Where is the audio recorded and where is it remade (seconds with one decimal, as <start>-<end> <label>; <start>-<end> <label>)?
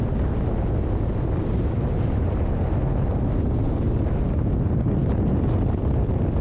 0.0-6.4 recorded